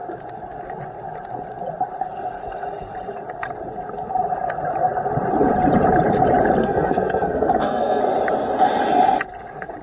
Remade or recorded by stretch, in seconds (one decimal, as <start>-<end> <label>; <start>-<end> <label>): 0.0-6.6 recorded; 6.6-8.0 remade; 8.0-9.8 recorded